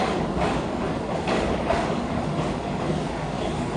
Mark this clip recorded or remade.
remade